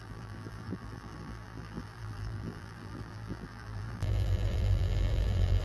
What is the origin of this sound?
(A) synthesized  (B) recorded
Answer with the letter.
A